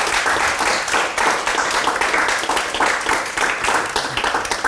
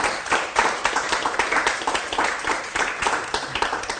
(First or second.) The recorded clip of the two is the first